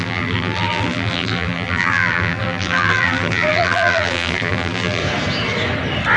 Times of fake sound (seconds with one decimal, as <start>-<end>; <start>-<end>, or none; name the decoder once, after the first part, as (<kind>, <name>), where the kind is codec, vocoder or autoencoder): 0.0-5.0 (vocoder, BigVGAN v2)